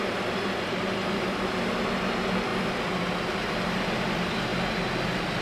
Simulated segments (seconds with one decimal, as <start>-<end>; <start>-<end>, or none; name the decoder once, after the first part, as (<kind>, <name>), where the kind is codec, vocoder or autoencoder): 0.0-4.5 (vocoder, BigVGAN v2)